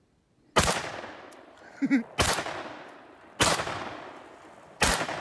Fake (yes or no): no